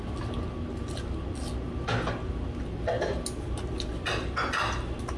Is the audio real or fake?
real